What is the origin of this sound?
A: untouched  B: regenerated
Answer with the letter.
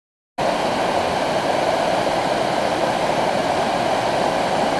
A